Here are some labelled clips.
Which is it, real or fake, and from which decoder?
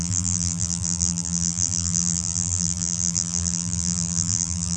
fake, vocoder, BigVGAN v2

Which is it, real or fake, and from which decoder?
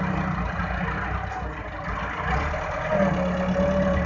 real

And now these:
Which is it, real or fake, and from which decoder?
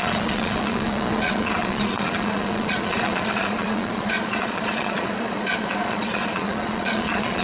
fake, vocoder, Vocos